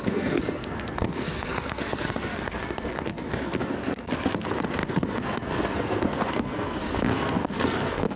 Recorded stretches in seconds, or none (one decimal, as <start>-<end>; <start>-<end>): none